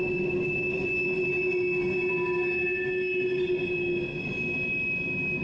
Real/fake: real